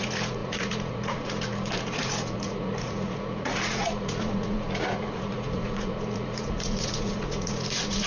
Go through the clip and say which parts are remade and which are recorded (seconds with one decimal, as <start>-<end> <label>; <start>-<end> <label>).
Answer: 0.0-8.1 remade